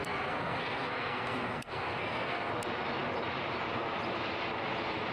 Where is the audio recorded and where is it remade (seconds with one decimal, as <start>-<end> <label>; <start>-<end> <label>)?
0.0-2.5 remade; 2.5-5.1 recorded